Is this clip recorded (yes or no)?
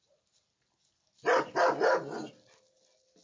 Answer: yes